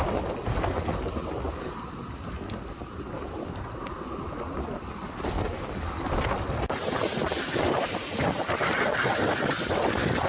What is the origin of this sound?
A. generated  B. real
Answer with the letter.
B